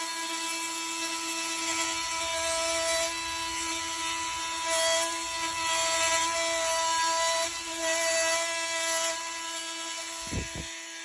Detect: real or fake real